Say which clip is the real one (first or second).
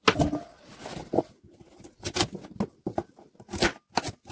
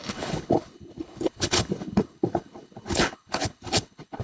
first